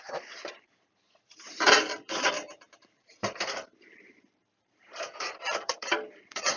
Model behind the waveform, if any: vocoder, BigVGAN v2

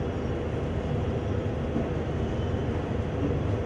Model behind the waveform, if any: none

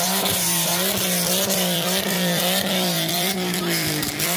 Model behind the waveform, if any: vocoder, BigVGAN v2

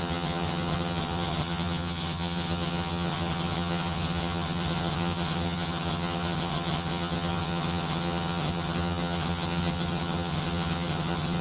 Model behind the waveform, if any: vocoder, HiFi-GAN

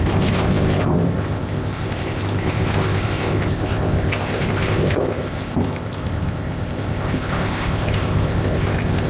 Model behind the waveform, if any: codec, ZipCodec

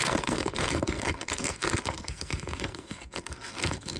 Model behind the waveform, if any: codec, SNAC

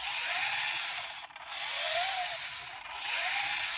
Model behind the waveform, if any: none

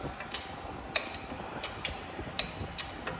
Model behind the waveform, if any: none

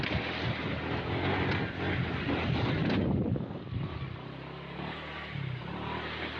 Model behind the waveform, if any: none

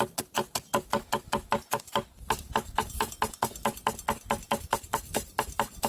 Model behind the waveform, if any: none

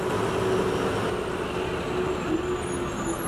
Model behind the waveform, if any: none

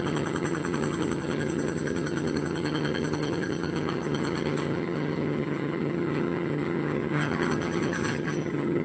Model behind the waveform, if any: vocoder, HiFi-GAN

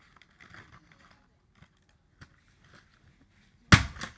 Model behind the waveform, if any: none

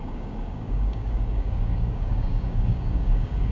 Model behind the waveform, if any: codec, DAC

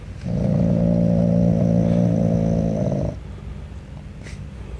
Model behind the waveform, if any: none